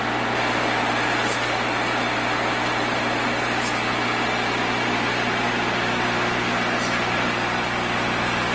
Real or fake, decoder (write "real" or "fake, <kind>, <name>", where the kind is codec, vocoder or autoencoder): real